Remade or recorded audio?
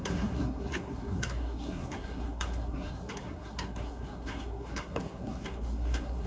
remade